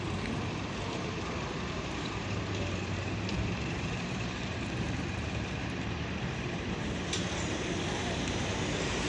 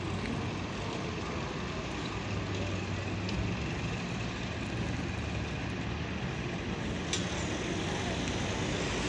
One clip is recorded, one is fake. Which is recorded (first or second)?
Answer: second